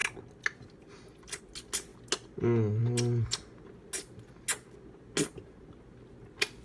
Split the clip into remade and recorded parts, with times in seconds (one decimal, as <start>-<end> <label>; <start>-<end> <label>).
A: 0.0-6.6 recorded

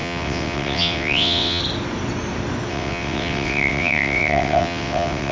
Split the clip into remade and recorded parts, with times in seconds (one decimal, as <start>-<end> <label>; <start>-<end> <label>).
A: 0.0-1.6 remade; 1.6-2.7 recorded; 2.7-5.3 remade

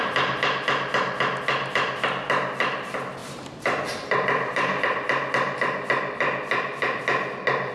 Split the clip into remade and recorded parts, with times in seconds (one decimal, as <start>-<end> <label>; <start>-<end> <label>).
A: 0.0-3.2 recorded; 3.2-7.0 remade; 7.0-7.7 recorded

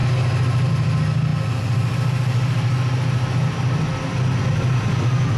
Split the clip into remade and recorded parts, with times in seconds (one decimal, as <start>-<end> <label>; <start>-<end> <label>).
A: 0.0-5.4 recorded

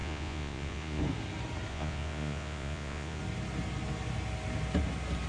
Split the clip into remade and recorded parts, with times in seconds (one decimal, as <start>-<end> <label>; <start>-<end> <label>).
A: 0.0-1.0 remade; 1.0-1.7 recorded; 1.7-3.2 remade; 3.2-5.3 recorded

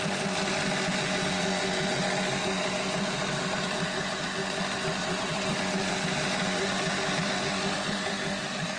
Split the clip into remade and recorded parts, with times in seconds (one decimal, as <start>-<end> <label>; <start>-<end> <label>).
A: 0.0-5.0 recorded; 5.0-5.5 remade; 5.5-8.8 recorded